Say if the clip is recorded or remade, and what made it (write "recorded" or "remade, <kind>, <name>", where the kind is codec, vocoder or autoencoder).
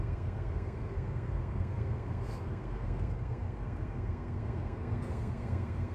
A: remade, codec, SNAC